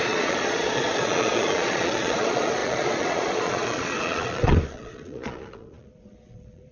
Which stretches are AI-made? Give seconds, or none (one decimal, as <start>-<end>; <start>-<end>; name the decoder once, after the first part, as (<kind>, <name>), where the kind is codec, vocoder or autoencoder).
0.0-6.7 (vocoder, Vocos)